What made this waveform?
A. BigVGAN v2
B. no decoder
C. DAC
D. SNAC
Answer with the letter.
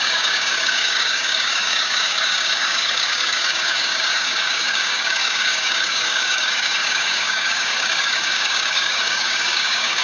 C